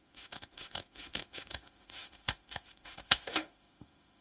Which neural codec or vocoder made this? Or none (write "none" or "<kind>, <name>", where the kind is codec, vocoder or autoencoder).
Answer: autoencoder, DAC-VAE